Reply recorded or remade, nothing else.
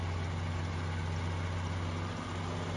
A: recorded